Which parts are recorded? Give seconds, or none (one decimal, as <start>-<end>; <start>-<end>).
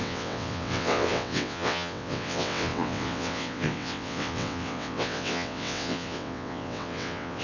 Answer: none